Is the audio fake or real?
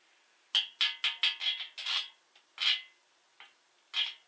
real